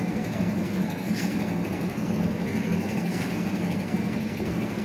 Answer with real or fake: fake